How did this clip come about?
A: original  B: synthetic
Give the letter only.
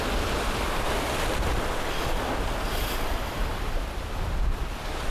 A